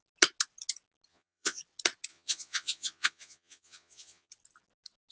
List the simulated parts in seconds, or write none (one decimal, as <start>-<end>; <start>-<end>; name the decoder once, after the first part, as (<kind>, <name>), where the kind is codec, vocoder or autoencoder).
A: 1.1-1.6 (vocoder, Vocos); 2.1-4.3